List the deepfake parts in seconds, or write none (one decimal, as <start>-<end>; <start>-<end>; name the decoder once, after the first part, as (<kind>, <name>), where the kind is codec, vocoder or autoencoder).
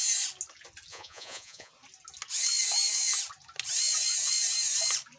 0.9-1.7 (vocoder, Vocos)